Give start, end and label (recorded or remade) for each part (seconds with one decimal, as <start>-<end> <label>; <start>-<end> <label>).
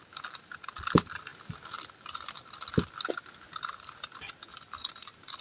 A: 0.0-4.5 recorded; 4.5-5.4 remade